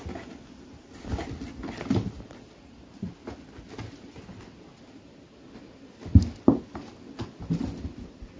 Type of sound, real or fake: real